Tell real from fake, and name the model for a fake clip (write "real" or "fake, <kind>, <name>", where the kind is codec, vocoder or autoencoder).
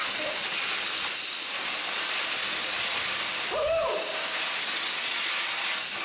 real